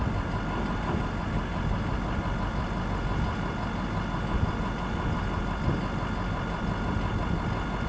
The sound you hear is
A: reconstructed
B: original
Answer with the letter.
B